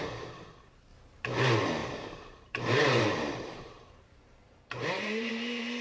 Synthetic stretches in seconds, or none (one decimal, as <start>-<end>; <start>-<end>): 1.8-5.3